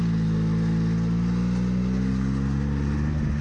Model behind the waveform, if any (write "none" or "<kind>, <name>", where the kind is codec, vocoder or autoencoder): none